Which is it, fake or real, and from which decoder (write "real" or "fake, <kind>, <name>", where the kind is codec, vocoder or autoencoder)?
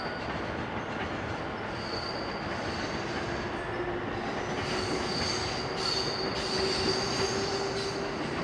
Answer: real